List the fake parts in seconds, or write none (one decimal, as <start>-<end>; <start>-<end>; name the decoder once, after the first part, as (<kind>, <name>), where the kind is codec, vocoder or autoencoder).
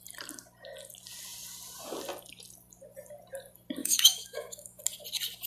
3.8-4.8 (autoencoder, DAC-VAE)